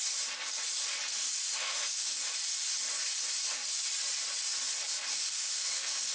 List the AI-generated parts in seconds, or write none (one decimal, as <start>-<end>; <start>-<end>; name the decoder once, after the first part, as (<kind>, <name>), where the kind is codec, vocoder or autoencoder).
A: 1.4-2.3 (autoencoder, DAC-VAE); 5.1-6.1